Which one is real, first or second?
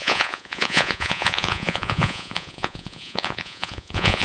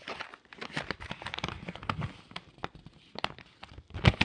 second